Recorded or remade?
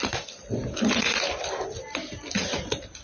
recorded